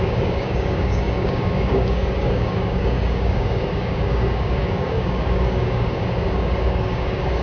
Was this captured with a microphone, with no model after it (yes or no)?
no